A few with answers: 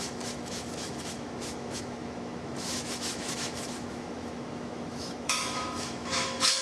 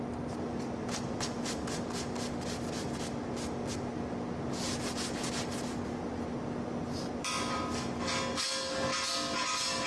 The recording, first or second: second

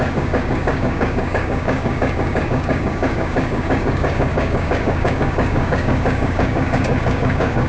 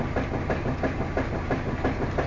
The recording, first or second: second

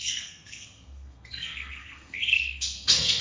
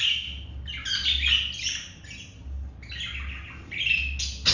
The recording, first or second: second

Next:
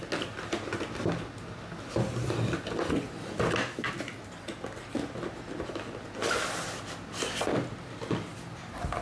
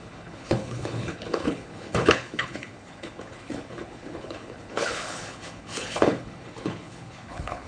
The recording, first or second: first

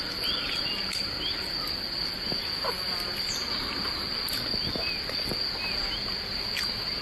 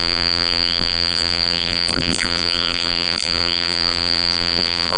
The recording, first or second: first